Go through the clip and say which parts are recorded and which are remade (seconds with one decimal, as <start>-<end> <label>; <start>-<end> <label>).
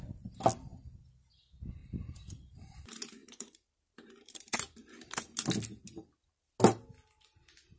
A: 0.0-1.8 recorded; 1.8-2.5 remade; 2.5-3.2 recorded; 3.2-4.7 remade; 4.7-7.8 recorded